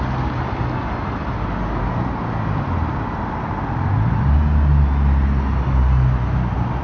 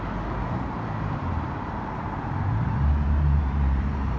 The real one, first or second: first